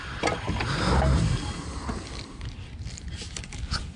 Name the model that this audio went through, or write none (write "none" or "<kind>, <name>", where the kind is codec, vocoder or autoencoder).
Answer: none